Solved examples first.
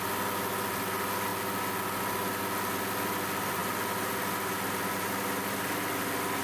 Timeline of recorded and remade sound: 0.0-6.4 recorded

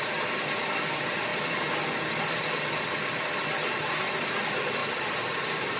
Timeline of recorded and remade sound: 0.0-4.8 recorded; 4.8-5.8 remade

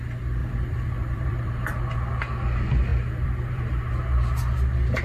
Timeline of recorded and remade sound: 0.0-0.4 recorded; 0.4-1.5 remade; 1.5-2.9 recorded; 2.9-3.9 remade; 3.9-5.0 recorded

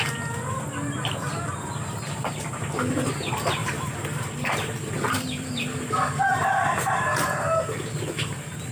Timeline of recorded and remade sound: 0.0-3.6 recorded; 3.6-7.1 remade; 7.1-8.7 recorded

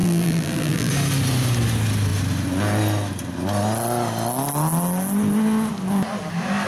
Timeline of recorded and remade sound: 0.0-0.9 remade; 0.9-6.7 recorded

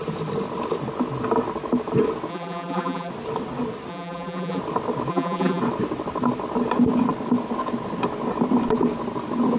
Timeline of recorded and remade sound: 0.0-2.3 recorded; 2.3-3.1 remade; 3.1-3.9 recorded; 3.9-4.6 remade; 4.6-5.1 recorded; 5.1-5.6 remade; 5.6-9.6 recorded